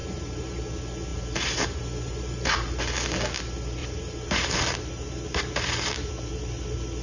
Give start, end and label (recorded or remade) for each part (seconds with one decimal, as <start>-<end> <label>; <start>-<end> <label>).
0.0-0.6 remade; 0.6-1.1 recorded; 1.1-2.8 remade; 2.8-3.8 recorded; 3.8-6.1 remade; 6.1-7.0 recorded